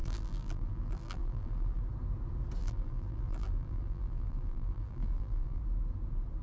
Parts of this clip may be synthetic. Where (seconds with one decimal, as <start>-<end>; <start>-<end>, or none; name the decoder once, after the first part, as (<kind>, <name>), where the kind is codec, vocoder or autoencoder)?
0.0-1.8 (vocoder, BigVGAN v2); 2.6-5.6